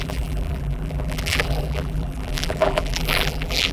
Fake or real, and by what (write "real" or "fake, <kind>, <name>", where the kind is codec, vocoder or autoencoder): fake, vocoder, BigVGAN v2